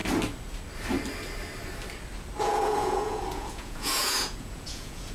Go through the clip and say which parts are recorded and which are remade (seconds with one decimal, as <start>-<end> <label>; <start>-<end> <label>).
0.0-2.4 recorded; 2.4-5.1 remade